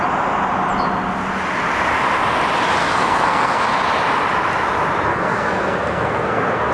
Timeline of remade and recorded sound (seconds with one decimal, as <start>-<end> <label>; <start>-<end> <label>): 0.0-2.8 recorded; 2.8-3.6 remade; 3.6-5.1 recorded; 5.1-6.7 remade